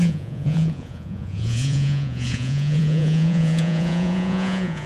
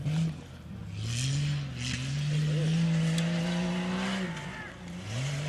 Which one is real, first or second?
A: second